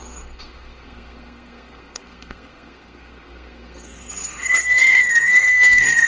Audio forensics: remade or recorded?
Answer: remade